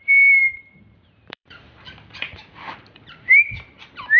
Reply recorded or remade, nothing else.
remade